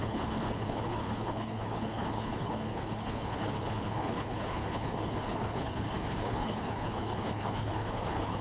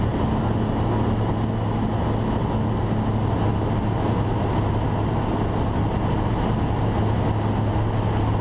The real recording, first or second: second